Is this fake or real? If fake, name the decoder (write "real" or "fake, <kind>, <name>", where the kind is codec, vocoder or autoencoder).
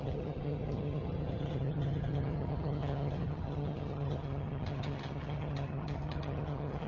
fake, vocoder, HiFi-GAN